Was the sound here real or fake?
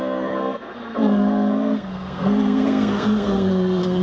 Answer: fake